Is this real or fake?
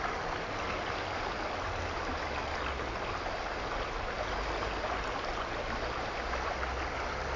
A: real